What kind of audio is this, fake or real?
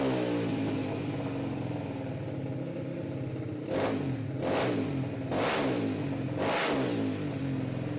real